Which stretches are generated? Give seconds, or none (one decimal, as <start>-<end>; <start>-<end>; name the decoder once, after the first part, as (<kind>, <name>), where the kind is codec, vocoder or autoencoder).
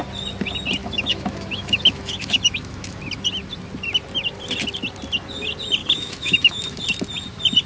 0.8-3.0 (autoencoder, DAC-VAE); 5.8-6.8